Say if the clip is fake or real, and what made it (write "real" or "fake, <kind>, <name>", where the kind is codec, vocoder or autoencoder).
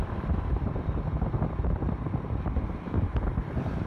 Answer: fake, vocoder, BigVGAN v2